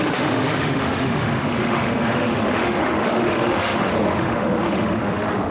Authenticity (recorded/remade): remade